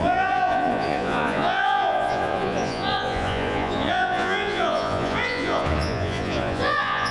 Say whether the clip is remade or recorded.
remade